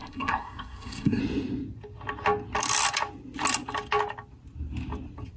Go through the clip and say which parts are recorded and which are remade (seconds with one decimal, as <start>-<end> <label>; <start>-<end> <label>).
0.0-1.2 remade; 1.2-5.4 recorded